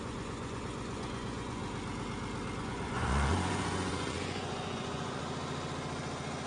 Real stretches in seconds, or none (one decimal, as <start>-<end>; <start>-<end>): 1.6-2.6; 5.2-6.5